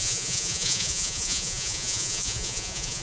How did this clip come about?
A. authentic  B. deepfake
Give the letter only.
B